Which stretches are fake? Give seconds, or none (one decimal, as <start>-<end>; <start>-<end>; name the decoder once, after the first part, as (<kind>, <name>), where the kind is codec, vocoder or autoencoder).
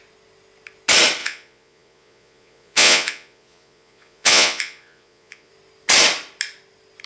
1.2-5.5 (vocoder, Vocos)